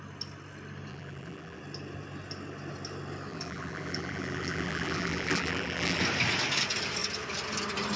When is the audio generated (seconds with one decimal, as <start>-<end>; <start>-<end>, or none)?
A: 0.9-1.6; 3.3-6.0